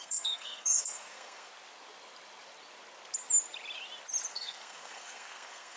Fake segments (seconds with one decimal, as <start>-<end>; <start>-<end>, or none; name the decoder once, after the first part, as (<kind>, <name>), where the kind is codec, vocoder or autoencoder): 0.0-1.5 (codec, SNAC); 4.3-5.8